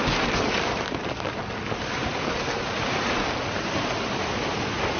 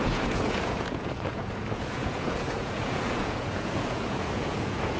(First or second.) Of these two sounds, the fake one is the second